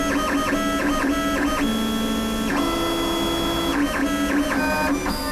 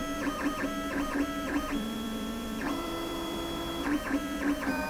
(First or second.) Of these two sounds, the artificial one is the second